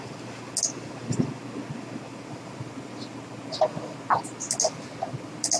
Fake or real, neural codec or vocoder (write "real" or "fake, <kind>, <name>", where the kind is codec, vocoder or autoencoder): real